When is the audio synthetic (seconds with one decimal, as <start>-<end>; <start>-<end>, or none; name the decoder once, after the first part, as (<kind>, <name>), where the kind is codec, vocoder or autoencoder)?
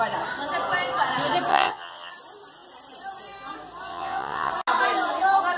1.5-2.1 (vocoder, WaveNeXt); 3.9-4.5